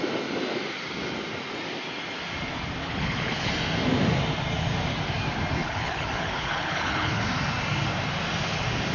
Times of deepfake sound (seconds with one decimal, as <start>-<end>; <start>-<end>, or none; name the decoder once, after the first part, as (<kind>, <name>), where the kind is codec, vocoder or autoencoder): 2.8-3.5 (codec, HILCodec); 5.6-7.2